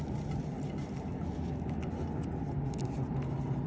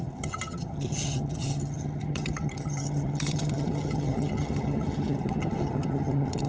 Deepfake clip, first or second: second